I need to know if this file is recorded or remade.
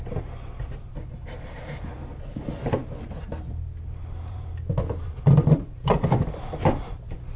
remade